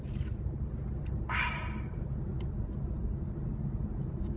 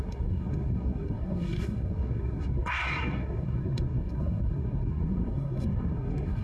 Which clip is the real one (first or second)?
first